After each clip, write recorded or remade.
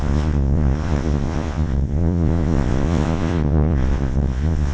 remade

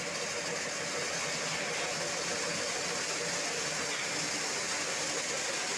recorded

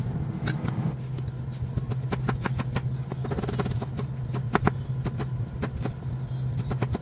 recorded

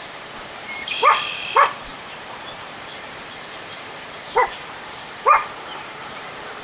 remade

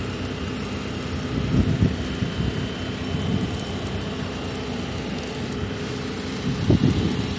recorded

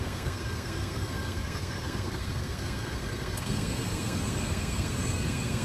remade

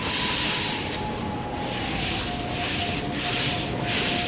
recorded